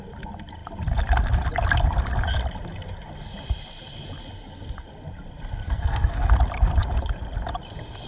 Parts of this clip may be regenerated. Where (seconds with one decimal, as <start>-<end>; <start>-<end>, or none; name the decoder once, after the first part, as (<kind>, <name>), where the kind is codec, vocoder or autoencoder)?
5.6-6.3 (codec, SNAC)

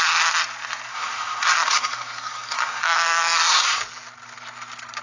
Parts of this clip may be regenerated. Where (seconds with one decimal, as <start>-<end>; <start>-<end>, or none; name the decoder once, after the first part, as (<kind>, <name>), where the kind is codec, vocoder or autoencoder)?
0.9-3.8 (codec, SNAC)

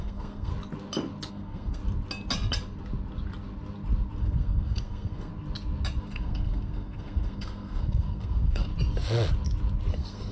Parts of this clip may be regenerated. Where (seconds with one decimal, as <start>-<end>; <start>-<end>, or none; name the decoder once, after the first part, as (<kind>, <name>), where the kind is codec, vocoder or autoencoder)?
0.0-0.5 (codec, SNAC); 1.3-1.8; 4.2-5.3; 6.0-8.7; 9.9-10.3

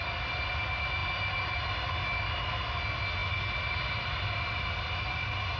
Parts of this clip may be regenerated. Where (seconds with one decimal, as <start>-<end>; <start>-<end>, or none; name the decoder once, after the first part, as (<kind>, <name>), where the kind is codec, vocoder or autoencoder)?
none